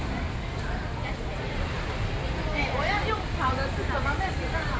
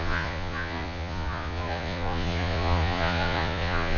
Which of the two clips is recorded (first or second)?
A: first